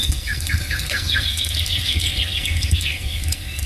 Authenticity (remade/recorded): remade